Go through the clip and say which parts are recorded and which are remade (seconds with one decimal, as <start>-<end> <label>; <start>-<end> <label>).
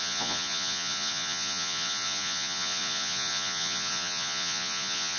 0.0-5.2 remade